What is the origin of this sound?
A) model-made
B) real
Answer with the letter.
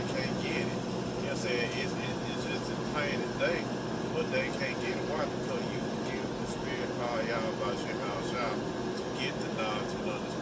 B